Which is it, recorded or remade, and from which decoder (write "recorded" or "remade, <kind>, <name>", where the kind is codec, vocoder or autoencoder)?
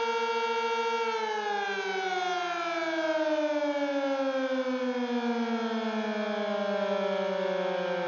recorded